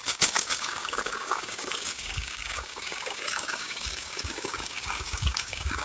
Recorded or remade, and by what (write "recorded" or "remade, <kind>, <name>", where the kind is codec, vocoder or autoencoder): remade, codec, DAC